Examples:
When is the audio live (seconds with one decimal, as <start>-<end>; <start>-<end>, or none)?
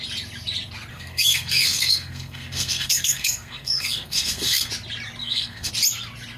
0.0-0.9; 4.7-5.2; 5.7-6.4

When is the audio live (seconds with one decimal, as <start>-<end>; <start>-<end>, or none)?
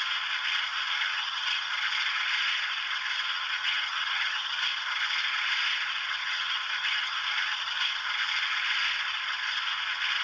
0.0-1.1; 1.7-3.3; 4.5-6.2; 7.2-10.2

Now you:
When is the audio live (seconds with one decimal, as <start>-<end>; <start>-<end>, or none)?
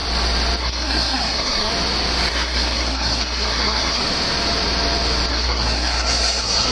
0.0-0.6; 1.7-2.3; 4.0-5.3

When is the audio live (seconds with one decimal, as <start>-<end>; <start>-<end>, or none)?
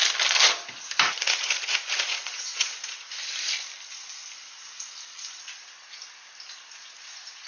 0.0-1.2; 3.2-6.5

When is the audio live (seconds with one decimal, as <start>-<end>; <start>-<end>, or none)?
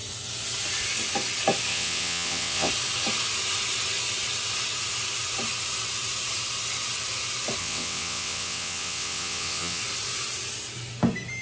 0.0-1.7; 2.7-7.6; 9.8-11.4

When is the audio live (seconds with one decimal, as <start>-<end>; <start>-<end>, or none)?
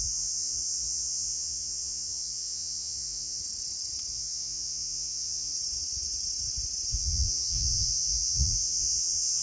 3.4-4.1; 5.5-6.9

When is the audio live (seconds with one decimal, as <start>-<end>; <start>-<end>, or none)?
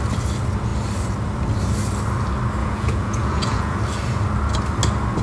0.0-2.6; 3.8-5.2